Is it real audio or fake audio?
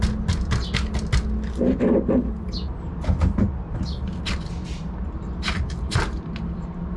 real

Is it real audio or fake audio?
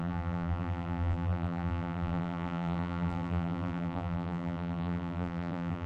fake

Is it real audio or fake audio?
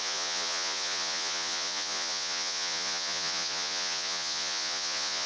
fake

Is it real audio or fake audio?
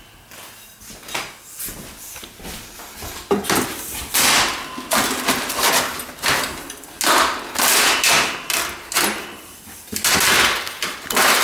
real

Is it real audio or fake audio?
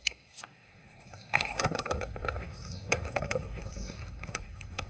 fake